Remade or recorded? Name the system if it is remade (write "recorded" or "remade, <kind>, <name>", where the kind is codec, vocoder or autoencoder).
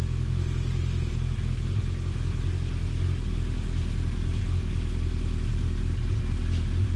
recorded